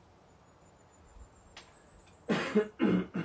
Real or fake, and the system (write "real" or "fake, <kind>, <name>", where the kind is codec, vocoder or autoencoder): real